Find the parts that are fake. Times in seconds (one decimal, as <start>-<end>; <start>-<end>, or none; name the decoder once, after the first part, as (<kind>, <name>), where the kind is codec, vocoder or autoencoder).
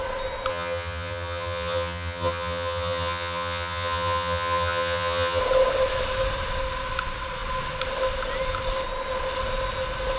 0.5-5.4 (vocoder, HiFi-GAN)